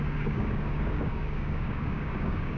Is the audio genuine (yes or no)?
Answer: no